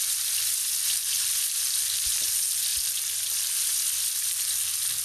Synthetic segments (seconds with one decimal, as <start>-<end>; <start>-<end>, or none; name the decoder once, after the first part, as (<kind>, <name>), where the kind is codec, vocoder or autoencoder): none